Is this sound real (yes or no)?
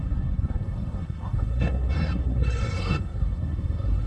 no